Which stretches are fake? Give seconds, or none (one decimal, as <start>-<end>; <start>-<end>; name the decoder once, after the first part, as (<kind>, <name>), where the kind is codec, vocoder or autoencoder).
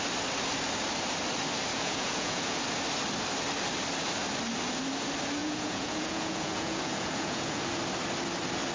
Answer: 1.7-2.6 (vocoder, Vocos); 5.4-7.8